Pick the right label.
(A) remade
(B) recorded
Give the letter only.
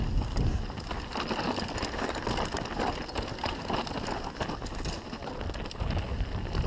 B